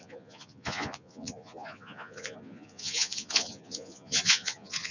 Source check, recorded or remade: remade